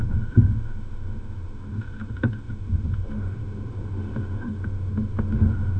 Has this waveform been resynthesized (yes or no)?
yes